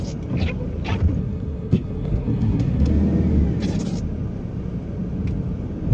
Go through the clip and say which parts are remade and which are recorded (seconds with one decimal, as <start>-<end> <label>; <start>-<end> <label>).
0.0-1.2 recorded; 1.2-2.9 remade; 2.9-5.9 recorded